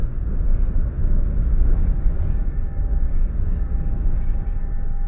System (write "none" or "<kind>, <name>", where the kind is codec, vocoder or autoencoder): none